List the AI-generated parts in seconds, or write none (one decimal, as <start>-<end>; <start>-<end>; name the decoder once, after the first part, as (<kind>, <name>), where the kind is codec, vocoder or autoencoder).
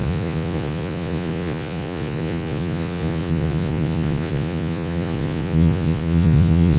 0.0-6.8 (vocoder, Vocos)